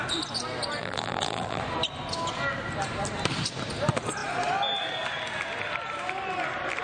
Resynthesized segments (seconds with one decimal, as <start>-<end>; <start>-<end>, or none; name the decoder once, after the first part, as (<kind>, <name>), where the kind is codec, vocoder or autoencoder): 0.8-1.6 (vocoder, BigVGAN v2)